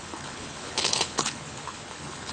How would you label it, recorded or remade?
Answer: remade